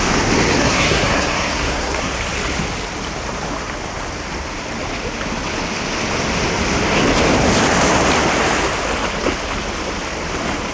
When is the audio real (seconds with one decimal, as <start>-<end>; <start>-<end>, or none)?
0.0-0.6; 2.1-10.7